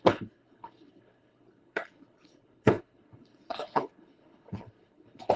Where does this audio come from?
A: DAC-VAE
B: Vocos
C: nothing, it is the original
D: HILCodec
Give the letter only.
D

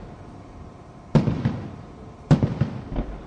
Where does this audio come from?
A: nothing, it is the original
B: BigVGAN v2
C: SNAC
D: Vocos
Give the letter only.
A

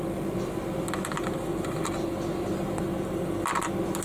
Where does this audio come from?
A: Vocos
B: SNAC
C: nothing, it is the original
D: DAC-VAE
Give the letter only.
C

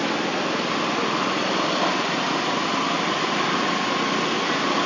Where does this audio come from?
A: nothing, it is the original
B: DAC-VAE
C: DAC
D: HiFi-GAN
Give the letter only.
A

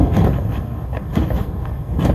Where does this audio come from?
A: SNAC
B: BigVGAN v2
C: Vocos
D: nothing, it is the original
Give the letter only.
A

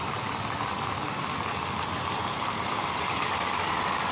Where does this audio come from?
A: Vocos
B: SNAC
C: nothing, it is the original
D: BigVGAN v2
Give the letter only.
C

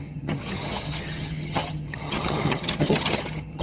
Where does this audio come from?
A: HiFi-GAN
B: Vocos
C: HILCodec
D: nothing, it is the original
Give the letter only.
A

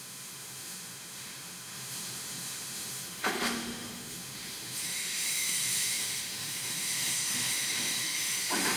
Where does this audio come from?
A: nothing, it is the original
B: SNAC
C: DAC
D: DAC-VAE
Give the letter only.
D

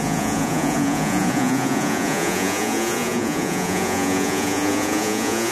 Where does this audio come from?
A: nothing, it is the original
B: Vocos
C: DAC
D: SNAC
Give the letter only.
B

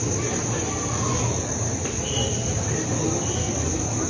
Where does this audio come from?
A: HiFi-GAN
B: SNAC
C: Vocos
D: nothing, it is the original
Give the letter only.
D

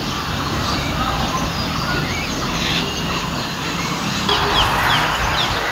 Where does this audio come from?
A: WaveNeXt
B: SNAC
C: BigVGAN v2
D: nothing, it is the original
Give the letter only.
D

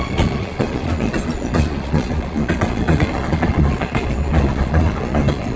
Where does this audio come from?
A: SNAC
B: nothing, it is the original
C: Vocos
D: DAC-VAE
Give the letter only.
C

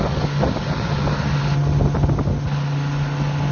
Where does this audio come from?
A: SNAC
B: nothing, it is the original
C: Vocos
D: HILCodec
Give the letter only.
B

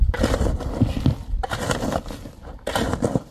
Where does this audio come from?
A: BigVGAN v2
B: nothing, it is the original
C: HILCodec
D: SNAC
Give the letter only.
B